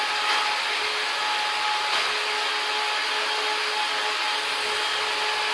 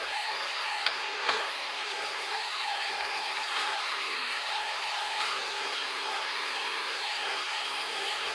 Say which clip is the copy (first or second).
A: second